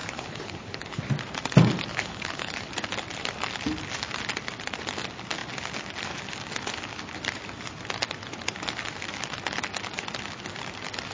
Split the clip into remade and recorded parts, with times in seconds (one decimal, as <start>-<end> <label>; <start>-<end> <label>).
0.0-1.0 remade; 1.0-1.9 recorded; 1.9-2.7 remade; 2.7-11.1 recorded

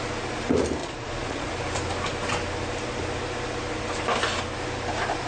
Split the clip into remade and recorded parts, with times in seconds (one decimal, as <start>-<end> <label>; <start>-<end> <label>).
0.0-0.8 recorded; 0.8-1.5 remade; 1.5-5.3 recorded

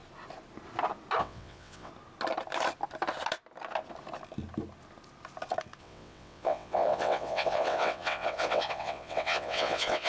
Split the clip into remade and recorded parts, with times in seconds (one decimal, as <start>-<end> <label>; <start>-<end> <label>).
0.0-1.2 recorded; 1.2-1.9 remade; 1.9-5.8 recorded; 5.8-10.1 remade

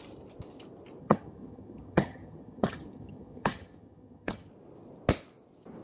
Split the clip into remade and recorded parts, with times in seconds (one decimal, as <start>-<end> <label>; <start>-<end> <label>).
0.0-1.0 recorded; 1.0-4.5 remade; 4.5-5.8 recorded

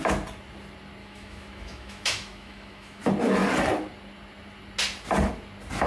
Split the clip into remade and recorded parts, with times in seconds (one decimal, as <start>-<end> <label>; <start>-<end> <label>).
0.0-1.0 recorded; 1.0-3.0 remade; 3.0-5.9 recorded